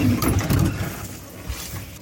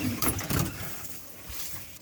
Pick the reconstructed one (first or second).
second